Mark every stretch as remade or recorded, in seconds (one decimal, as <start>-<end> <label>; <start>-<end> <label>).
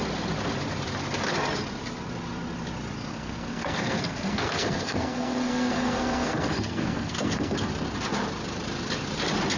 0.0-3.1 recorded; 3.1-7.7 remade; 7.7-9.6 recorded